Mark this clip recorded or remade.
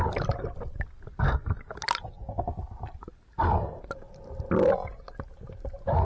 recorded